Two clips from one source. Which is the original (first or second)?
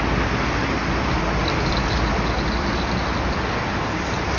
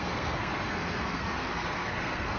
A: first